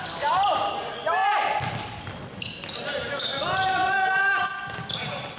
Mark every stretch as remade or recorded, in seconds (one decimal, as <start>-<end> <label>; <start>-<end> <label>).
0.0-5.4 recorded